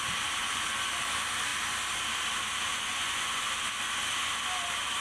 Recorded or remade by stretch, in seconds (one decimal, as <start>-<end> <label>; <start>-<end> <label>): 0.0-0.4 recorded; 0.4-0.9 remade; 0.9-2.7 recorded; 2.7-3.4 remade; 3.4-5.0 recorded